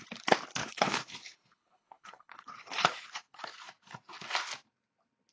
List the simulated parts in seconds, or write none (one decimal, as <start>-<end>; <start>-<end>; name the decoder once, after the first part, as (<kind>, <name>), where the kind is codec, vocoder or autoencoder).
0.6-3.4 (codec, HILCodec)